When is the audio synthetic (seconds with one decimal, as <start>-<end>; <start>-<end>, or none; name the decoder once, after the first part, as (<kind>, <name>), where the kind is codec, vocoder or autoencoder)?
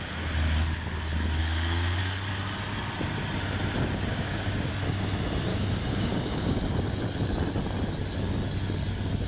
1.4-2.0 (codec, DAC); 4.1-4.7; 5.5-6.6